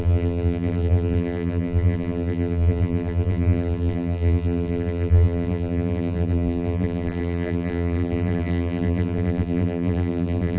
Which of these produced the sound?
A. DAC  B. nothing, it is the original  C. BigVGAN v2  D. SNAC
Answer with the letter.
C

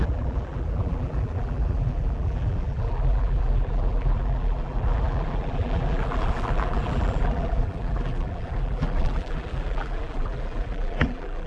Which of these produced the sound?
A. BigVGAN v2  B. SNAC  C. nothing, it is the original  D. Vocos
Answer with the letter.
A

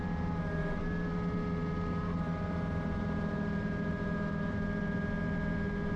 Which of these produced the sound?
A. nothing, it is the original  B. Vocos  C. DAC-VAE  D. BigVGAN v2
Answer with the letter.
D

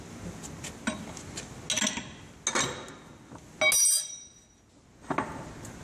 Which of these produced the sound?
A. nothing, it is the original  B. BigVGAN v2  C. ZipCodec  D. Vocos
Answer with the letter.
A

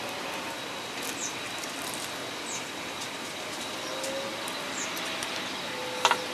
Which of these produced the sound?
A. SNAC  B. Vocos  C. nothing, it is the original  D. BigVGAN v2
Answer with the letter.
D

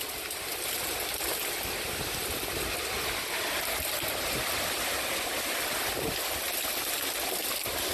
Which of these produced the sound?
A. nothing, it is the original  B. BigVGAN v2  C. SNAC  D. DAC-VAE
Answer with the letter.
A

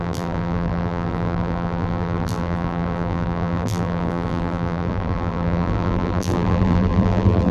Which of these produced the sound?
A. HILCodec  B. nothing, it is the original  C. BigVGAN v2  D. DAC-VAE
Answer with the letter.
C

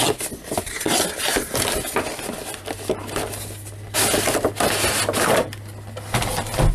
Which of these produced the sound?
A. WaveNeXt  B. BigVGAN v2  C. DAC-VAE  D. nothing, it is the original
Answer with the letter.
D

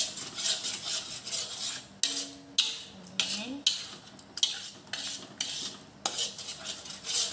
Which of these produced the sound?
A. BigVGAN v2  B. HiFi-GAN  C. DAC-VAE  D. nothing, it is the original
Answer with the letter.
D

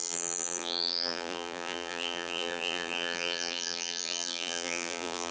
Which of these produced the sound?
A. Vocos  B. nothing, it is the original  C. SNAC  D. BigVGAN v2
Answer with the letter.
D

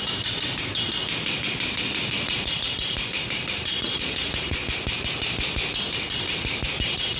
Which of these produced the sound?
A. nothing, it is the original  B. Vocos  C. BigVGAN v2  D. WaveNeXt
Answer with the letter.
C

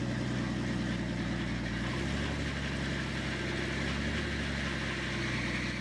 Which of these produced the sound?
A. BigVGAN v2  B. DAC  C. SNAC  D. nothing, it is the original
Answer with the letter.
D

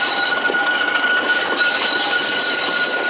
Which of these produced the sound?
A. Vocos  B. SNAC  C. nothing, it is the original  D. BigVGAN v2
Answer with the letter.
D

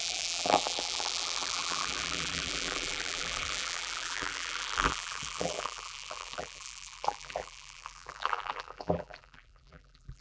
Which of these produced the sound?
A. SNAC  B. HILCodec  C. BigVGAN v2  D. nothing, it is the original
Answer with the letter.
C